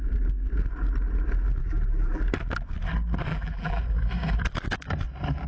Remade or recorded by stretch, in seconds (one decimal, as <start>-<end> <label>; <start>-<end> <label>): 0.0-1.6 recorded; 1.6-2.2 remade; 2.2-3.3 recorded; 3.3-3.8 remade; 3.8-5.5 recorded